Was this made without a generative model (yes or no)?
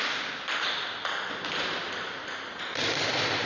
yes